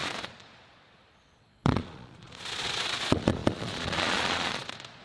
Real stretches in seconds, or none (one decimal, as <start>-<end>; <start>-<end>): none